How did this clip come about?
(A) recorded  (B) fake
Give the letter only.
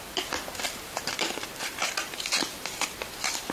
B